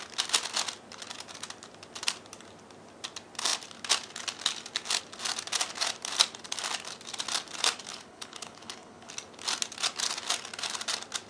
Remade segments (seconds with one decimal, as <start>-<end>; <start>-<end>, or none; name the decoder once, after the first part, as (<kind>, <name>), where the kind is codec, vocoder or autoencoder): 7.9-9.1 (codec, HILCodec)